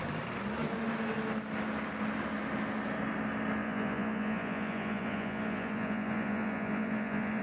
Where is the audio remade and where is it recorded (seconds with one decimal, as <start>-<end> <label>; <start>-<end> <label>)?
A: 0.0-3.6 recorded; 3.6-7.4 remade